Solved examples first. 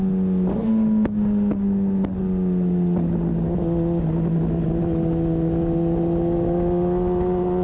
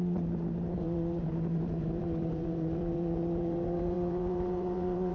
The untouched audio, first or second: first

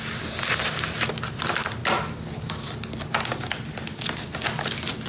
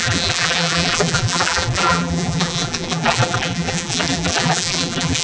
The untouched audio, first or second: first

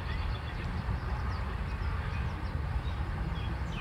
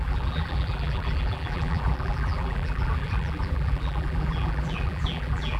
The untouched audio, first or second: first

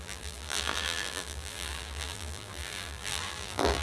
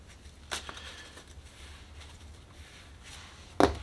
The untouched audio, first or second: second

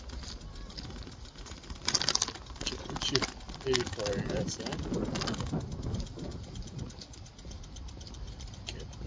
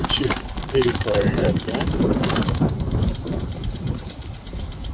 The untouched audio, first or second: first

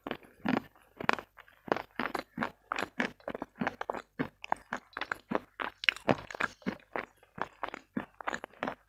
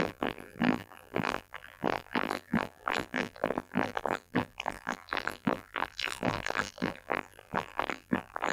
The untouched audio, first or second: first